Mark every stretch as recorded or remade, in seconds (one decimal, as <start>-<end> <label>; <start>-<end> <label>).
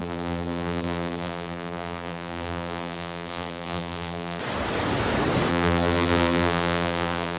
0.0-4.4 remade; 4.4-5.5 recorded; 5.5-7.4 remade